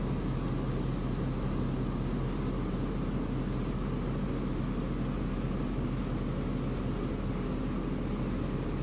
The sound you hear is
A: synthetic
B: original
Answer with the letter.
B